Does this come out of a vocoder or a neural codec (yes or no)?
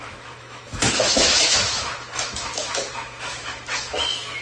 yes